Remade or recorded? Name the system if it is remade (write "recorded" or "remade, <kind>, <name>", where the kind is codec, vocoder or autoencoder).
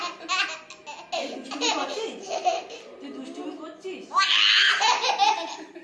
recorded